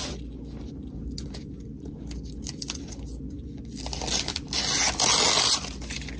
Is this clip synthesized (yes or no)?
no